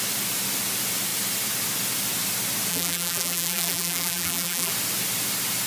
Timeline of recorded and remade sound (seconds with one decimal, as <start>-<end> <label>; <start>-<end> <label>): 0.0-2.7 recorded; 2.7-4.7 remade; 4.7-5.7 recorded